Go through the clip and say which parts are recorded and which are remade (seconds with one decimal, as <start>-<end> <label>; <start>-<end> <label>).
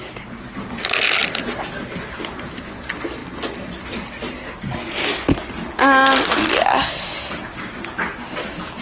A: 0.0-8.8 recorded